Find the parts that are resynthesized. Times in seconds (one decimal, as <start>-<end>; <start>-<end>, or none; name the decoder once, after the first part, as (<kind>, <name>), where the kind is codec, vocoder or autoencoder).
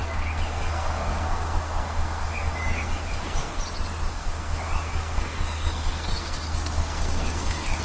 0.0-3.6 (codec, SNAC); 4.1-7.8